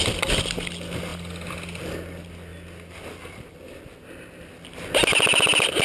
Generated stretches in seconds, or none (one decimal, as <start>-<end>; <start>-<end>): none